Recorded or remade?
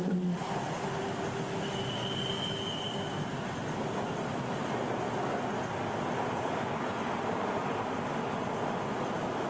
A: recorded